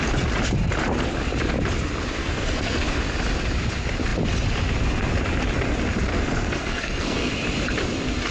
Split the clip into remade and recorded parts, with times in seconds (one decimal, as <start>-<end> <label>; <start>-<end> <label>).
0.0-2.2 recorded; 2.2-3.0 remade; 3.0-6.1 recorded; 6.1-7.3 remade; 7.3-8.3 recorded